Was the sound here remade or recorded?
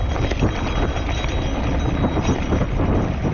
recorded